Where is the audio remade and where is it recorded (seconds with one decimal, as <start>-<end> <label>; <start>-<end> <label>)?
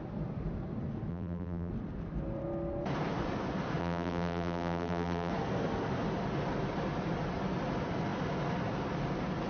0.0-1.1 recorded; 1.1-1.7 remade; 1.7-3.8 recorded; 3.8-5.3 remade; 5.3-9.5 recorded